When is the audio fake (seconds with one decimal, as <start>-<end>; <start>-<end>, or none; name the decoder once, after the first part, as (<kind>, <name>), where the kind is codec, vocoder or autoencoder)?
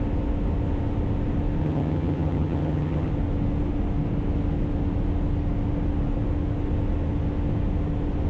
1.6-3.1 (vocoder, HiFi-GAN)